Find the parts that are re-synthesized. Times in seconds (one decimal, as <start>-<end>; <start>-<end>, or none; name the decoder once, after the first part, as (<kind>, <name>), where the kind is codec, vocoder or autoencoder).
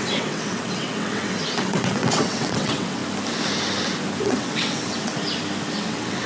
0.0-3.0 (vocoder, WaveNeXt); 4.2-5.1; 5.7-6.3